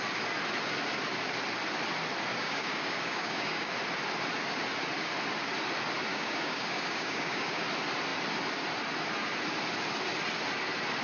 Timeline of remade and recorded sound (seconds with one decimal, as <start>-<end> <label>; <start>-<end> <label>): 0.0-2.3 recorded; 2.3-3.7 remade; 3.7-6.1 recorded; 6.1-7.6 remade; 7.6-11.0 recorded